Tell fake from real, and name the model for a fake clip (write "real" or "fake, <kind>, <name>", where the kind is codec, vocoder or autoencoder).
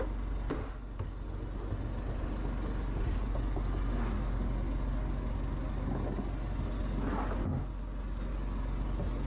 real